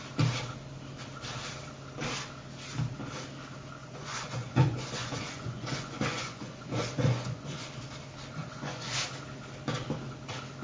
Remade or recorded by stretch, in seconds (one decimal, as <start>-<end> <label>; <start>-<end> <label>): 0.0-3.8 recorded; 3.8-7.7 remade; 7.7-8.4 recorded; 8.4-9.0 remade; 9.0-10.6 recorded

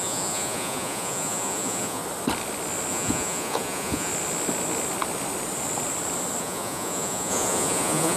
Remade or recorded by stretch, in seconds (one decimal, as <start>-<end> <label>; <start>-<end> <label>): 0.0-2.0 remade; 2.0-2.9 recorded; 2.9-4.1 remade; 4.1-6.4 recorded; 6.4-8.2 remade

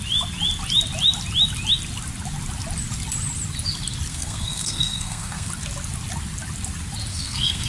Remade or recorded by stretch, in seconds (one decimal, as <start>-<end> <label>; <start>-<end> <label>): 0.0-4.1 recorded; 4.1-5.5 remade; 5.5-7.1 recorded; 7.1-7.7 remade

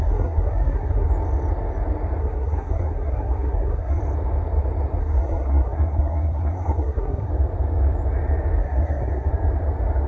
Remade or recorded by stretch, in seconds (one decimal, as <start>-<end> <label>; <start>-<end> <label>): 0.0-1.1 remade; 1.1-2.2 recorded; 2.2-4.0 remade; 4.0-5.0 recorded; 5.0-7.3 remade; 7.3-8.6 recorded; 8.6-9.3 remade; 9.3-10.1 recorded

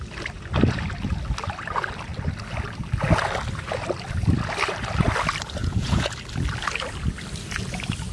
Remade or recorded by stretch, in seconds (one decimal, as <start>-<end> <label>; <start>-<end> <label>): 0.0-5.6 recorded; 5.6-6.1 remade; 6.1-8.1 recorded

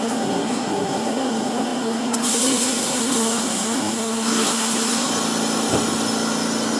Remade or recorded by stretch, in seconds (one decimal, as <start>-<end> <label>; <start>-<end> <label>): 0.0-5.1 remade; 5.1-6.8 recorded

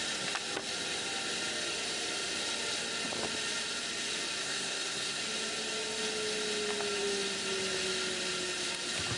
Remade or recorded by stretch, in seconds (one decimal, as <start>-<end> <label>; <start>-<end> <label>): 0.0-4.4 recorded; 4.4-5.2 remade; 5.2-9.2 recorded

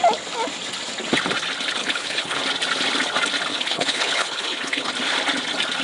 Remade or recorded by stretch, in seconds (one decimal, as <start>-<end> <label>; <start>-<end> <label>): 0.0-1.8 recorded; 1.8-2.4 remade; 2.4-3.5 recorded; 3.5-4.9 remade; 4.9-5.8 recorded